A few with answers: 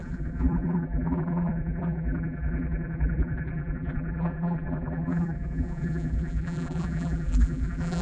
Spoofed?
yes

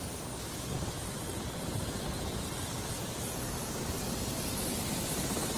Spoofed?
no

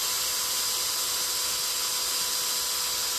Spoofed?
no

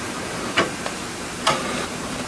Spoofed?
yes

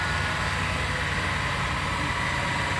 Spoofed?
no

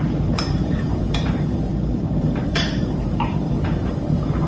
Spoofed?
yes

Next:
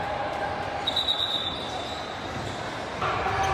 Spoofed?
yes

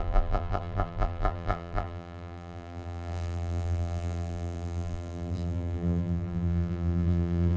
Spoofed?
yes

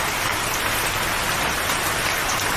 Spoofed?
no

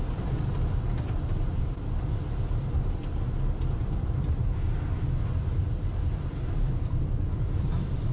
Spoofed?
yes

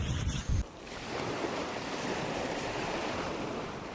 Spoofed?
yes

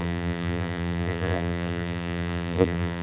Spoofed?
yes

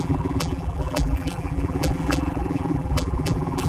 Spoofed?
yes